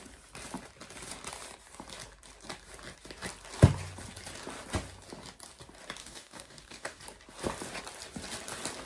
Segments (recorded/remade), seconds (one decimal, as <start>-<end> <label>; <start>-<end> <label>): 0.0-6.0 recorded; 6.0-7.0 remade; 7.0-8.9 recorded